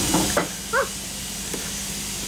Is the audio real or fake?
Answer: real